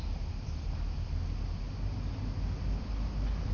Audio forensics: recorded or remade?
recorded